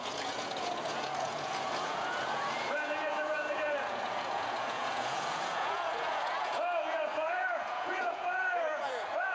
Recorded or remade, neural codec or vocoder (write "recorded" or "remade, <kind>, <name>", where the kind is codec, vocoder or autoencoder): remade, vocoder, Vocos